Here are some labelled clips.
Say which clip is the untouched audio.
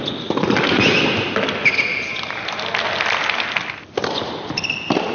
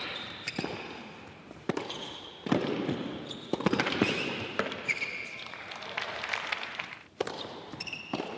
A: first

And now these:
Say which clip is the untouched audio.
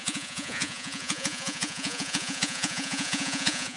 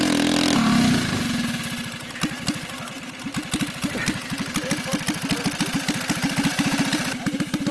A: second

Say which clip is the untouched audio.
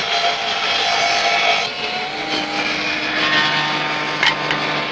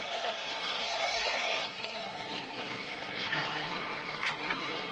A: first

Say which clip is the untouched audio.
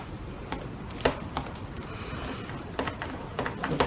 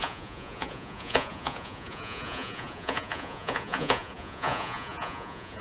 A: first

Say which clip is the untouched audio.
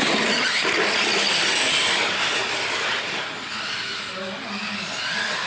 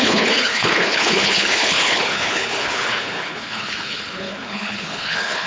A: first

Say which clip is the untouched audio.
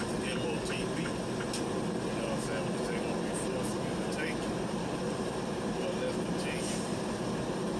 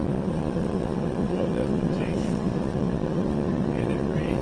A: first